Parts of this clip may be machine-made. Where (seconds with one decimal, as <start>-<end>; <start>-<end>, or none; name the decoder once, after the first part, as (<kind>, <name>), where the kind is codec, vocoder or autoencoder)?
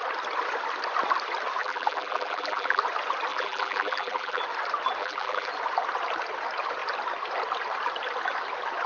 1.6-2.8 (vocoder, BigVGAN v2); 3.3-4.4; 5.0-5.5